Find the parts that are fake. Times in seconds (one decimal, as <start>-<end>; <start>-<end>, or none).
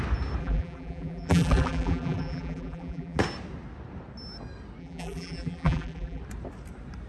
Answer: 0.4-3.2; 4.8-6.2